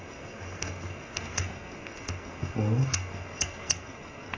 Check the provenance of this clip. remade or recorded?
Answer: remade